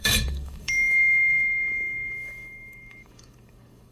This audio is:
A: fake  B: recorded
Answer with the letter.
A